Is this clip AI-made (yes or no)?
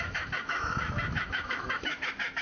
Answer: yes